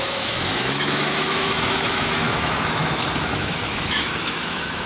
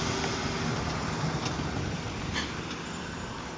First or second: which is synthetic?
first